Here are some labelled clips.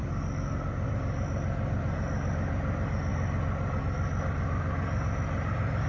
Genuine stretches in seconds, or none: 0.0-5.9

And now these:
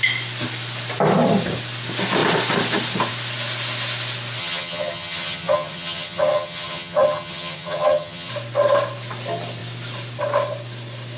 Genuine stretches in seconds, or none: 0.0-4.4; 8.3-11.2

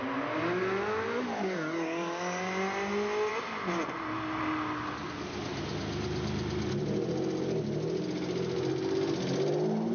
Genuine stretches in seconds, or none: 0.0-9.9

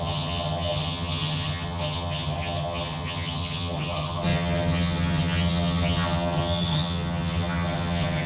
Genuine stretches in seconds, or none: none

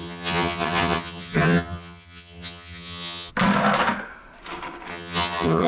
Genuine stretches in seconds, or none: 3.3-4.9

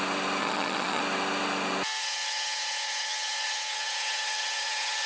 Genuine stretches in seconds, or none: 0.0-0.4; 1.0-2.0

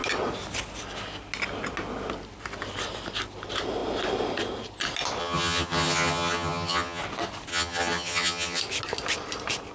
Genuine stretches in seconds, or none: 0.0-5.2; 7.0-7.5; 8.6-9.7